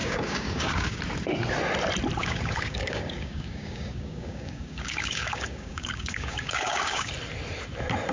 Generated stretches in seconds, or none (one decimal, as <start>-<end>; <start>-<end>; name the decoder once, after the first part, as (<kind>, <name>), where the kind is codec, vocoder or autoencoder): 0.0-1.0 (codec, DAC); 2.2-7.1